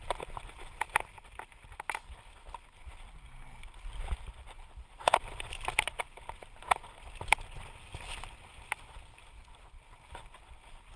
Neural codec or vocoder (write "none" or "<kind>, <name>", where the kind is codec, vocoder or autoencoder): none